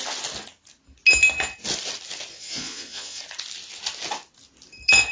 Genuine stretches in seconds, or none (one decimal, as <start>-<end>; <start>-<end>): 0.0-2.3; 3.2-5.1

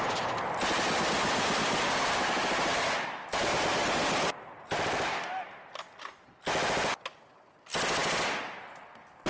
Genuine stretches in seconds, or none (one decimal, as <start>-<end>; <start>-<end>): 0.0-9.3

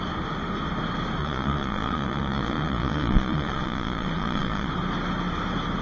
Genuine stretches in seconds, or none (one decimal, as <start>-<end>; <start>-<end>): 0.0-1.2; 4.7-5.8

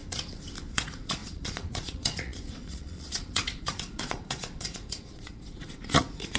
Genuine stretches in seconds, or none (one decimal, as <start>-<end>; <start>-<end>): 0.0-0.7

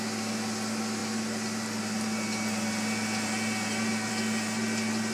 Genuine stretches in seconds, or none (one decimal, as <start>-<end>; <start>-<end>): 0.0-5.1